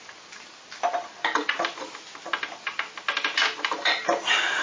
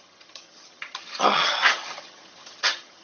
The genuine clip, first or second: first